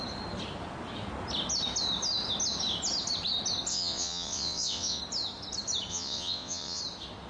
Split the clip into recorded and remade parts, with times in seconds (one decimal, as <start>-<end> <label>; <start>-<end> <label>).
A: 0.0-3.7 recorded; 3.7-5.0 remade; 5.0-5.9 recorded; 5.9-6.8 remade; 6.8-7.3 recorded